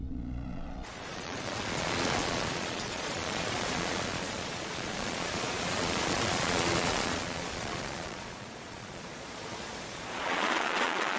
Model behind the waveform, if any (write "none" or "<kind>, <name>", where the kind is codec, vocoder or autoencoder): vocoder, Vocos